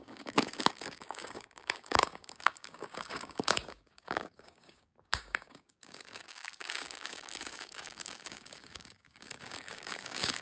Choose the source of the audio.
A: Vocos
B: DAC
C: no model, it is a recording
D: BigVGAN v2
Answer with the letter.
B